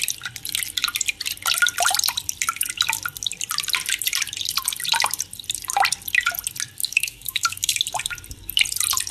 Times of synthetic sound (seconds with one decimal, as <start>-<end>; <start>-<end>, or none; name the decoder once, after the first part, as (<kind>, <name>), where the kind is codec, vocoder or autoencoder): 6.8-7.8 (codec, DAC)